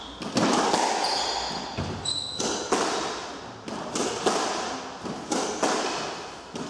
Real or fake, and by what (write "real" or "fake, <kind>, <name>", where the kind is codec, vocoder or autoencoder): real